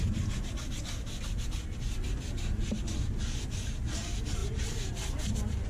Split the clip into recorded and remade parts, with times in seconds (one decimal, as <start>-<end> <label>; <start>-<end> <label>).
0.0-5.7 recorded